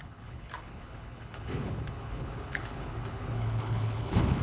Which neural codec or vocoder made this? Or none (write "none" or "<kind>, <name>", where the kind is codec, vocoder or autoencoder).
codec, HILCodec